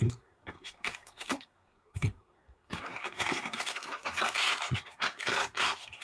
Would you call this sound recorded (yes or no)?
no